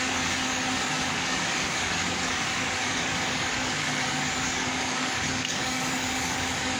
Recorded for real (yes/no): no